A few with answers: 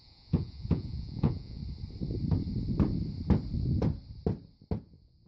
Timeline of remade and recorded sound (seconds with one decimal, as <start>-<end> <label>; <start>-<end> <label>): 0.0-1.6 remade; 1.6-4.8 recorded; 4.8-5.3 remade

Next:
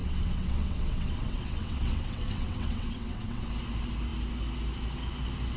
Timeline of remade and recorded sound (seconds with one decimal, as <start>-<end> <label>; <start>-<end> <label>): 0.0-3.4 remade; 3.4-5.6 recorded

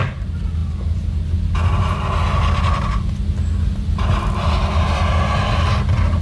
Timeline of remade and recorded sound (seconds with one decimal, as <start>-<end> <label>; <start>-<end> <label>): 0.0-6.2 recorded

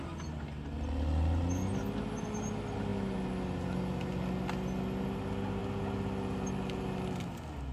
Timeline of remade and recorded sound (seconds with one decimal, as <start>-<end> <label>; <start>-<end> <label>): 0.0-7.7 recorded

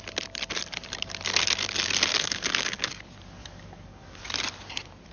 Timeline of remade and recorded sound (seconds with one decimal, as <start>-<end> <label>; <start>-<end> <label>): 0.0-2.1 recorded; 2.1-2.9 remade; 2.9-3.4 recorded; 3.4-4.2 remade; 4.2-5.1 recorded

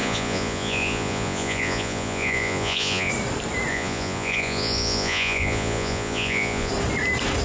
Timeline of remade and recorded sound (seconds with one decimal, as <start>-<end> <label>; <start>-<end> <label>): 0.0-3.1 remade; 3.1-3.7 recorded; 3.7-6.7 remade; 6.7-7.4 recorded